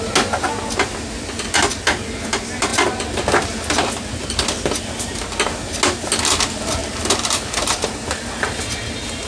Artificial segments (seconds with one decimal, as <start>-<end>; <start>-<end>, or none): 6.8-7.9